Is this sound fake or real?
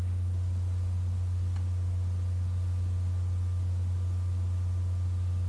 real